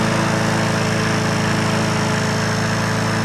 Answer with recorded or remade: recorded